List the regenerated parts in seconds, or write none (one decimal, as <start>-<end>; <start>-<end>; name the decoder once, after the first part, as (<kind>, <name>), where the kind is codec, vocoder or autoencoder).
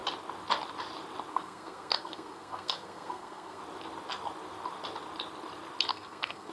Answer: 1.3-3.6 (codec, SNAC); 5.9-6.5